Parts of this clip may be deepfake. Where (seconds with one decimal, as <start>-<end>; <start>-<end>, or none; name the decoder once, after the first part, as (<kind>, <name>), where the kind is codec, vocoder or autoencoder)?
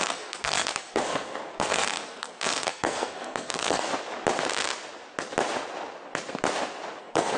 0.0-3.9 (codec, SNAC); 7.0-7.4